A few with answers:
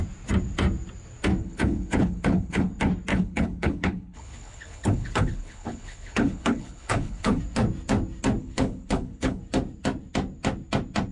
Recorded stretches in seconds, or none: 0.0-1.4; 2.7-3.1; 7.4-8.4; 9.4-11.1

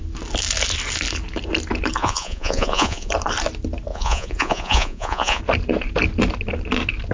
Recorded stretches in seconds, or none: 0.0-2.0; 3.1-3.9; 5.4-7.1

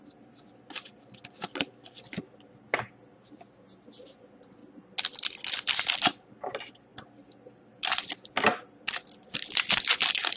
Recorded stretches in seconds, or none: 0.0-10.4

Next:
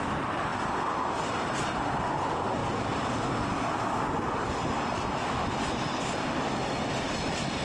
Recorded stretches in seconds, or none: 0.0-7.6

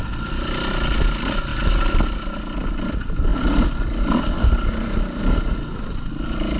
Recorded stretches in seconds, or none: 0.0-1.5; 2.0-6.6